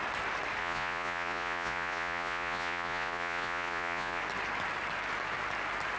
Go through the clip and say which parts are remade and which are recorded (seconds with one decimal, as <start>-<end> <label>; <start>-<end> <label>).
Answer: 0.0-0.6 recorded; 0.6-4.2 remade; 4.2-6.0 recorded